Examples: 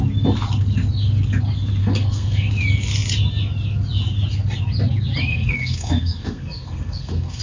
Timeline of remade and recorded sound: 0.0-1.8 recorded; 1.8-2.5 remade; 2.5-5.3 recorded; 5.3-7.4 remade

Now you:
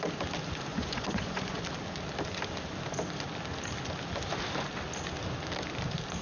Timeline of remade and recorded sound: 0.0-0.7 recorded; 0.7-1.6 remade; 1.6-6.2 recorded

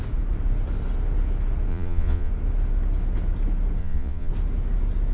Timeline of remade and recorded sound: 0.0-1.7 recorded; 1.7-2.3 remade; 2.3-3.8 recorded; 3.8-4.3 remade; 4.3-5.1 recorded

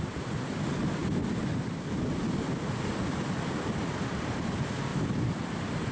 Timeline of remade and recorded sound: 0.0-5.9 remade

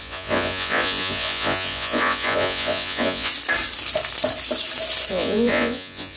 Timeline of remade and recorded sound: 0.0-3.3 remade; 3.3-5.1 recorded; 5.1-6.2 remade

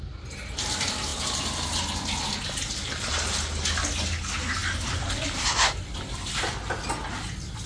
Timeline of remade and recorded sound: 0.0-4.6 recorded; 4.6-6.3 remade; 6.3-7.7 recorded